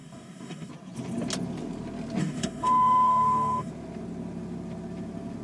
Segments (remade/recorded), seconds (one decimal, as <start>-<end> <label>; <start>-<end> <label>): 0.0-0.7 remade; 0.7-2.2 recorded; 2.2-3.7 remade; 3.7-5.4 recorded